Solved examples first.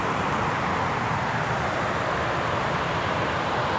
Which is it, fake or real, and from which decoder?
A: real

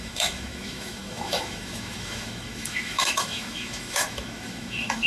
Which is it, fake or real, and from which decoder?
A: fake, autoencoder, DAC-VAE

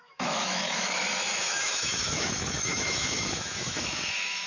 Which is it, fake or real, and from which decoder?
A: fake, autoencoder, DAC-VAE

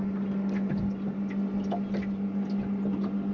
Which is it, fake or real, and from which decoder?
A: real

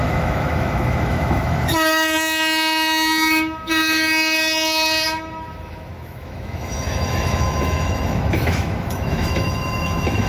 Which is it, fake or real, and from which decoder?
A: fake, autoencoder, DAC-VAE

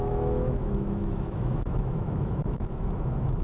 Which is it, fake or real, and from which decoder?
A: fake, autoencoder, DAC-VAE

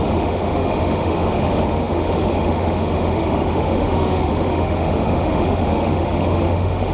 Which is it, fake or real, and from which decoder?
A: fake, autoencoder, DAC-VAE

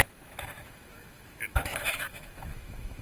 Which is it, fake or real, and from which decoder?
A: fake, autoencoder, DAC-VAE